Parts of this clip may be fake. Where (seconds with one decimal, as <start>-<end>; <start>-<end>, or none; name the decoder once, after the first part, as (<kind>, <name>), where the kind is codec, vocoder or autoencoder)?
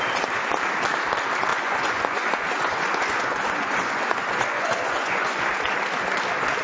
1.5-5.5 (vocoder, Vocos)